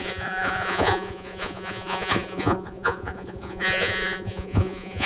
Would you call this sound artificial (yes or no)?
yes